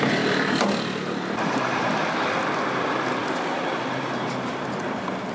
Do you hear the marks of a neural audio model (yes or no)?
yes